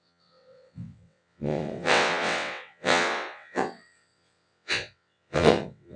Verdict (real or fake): fake